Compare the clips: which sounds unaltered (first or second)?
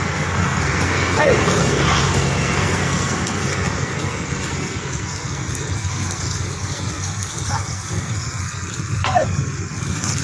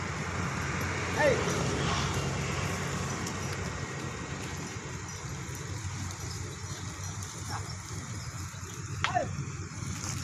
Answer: second